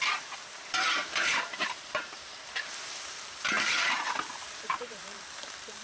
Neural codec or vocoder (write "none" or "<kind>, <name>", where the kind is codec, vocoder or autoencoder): vocoder, BigVGAN v2